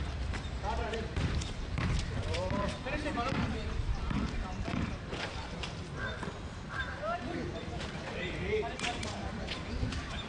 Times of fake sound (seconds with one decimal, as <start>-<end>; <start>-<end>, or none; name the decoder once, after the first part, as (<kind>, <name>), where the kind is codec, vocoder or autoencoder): 0.0-5.8 (vocoder, BigVGAN v2); 6.4-10.3